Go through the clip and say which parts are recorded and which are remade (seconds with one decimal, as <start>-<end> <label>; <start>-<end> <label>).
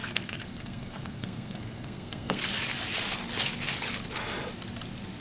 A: 0.0-2.4 remade; 2.4-5.2 recorded